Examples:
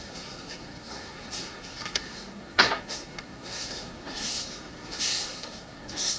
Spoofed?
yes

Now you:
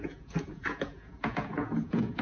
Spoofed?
yes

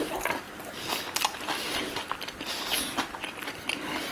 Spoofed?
no